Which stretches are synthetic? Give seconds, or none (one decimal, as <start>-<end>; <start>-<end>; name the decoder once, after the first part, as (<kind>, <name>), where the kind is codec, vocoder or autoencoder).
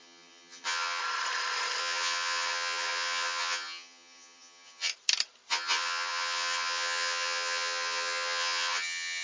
0.0-1.0 (vocoder, HiFi-GAN); 1.8-4.9; 5.5-9.2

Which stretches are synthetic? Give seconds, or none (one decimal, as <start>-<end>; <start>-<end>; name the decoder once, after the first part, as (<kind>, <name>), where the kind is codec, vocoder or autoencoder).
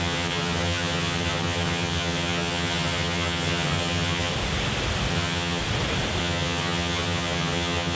0.0-4.3 (vocoder, HiFi-GAN); 5.1-5.6; 6.2-8.0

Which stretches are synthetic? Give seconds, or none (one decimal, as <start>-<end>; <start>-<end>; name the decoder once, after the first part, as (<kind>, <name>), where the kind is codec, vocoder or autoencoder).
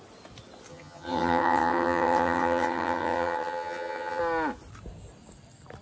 0.7-4.2 (vocoder, HiFi-GAN)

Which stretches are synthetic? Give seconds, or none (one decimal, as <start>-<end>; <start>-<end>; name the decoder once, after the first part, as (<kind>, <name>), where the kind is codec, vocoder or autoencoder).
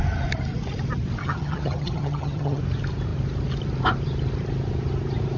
1.2-2.6 (vocoder, HiFi-GAN)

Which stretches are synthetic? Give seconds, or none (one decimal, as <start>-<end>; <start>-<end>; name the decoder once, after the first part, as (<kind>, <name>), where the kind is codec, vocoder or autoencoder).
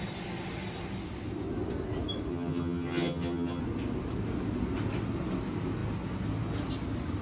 2.3-3.6 (vocoder, HiFi-GAN)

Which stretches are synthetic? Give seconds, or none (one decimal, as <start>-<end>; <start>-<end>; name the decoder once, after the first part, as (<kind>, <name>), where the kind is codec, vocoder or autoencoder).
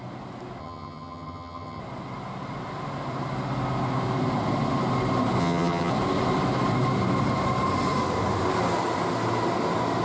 0.6-1.8 (vocoder, HiFi-GAN); 5.4-5.9